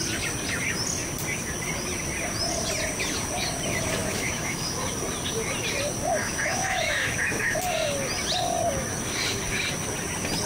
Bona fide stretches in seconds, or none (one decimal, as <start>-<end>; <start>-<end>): 0.0-4.0; 4.7-6.2; 7.6-10.5